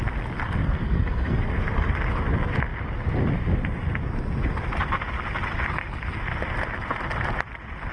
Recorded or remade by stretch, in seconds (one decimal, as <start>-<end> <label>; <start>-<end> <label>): 0.0-0.6 recorded; 0.6-1.4 remade; 1.4-7.9 recorded